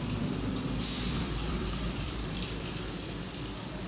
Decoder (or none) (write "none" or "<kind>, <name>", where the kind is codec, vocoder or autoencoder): vocoder, BigVGAN v2